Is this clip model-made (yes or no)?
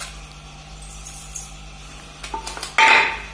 no